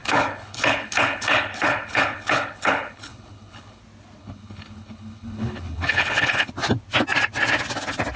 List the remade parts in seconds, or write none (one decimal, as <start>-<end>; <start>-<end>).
0.0-3.8; 4.2-6.5